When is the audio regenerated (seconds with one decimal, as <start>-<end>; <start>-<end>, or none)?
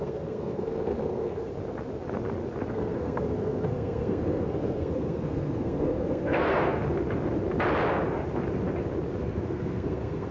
0.0-1.5; 2.7-6.8; 9.2-10.3